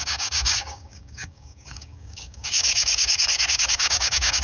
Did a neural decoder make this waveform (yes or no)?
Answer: yes